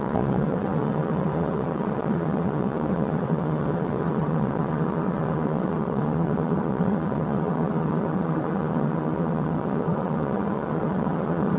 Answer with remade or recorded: remade